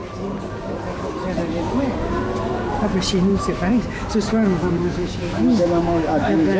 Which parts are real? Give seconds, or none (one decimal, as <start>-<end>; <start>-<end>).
0.0-3.3; 4.1-4.6